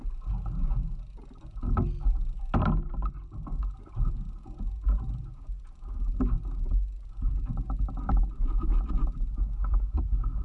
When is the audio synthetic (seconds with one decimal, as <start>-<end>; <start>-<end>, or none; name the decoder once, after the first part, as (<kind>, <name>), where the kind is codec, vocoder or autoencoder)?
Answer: none